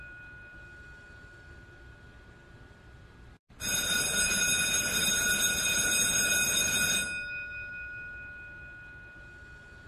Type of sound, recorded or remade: recorded